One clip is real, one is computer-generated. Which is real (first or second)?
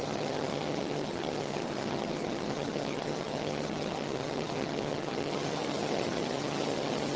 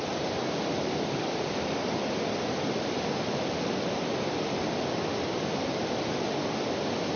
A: second